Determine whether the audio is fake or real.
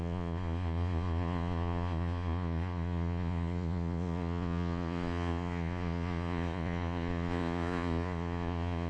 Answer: fake